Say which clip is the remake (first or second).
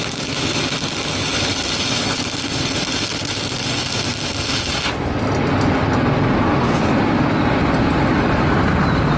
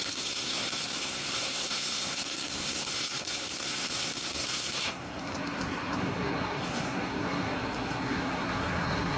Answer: second